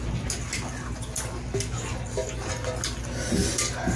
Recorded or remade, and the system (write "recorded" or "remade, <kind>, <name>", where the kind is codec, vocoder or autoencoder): recorded